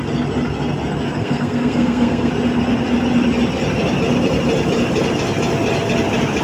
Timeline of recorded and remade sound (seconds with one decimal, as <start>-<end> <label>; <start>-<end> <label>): 0.0-1.2 recorded; 1.2-2.3 remade; 2.3-6.4 recorded